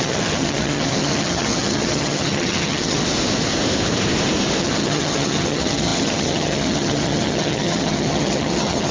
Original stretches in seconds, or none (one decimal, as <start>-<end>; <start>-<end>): 3.0-4.6